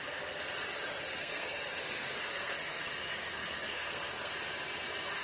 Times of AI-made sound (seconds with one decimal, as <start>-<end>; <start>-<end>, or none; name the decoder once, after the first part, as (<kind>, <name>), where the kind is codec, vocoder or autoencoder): 1.2-4.3 (codec, SNAC)